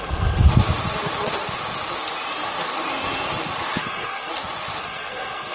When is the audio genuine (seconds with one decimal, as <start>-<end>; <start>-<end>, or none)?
0.5-3.8; 4.3-4.8